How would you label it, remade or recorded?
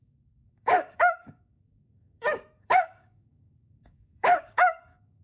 remade